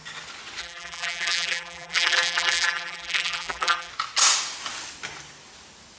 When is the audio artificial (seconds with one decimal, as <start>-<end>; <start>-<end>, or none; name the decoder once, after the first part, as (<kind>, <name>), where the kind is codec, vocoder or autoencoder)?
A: 0.6-3.9 (vocoder, BigVGAN v2)